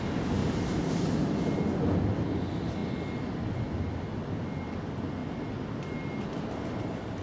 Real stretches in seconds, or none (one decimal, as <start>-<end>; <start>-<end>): 0.0-0.4; 1.3-7.2

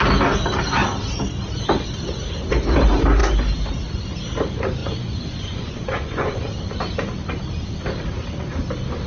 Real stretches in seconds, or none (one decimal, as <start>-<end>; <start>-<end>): 0.0-4.8; 6.4-9.1